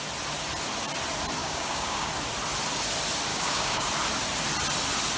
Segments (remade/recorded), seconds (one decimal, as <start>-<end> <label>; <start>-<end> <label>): 0.0-1.4 recorded; 1.4-2.1 remade; 2.1-3.3 recorded; 3.3-3.9 remade; 3.9-5.2 recorded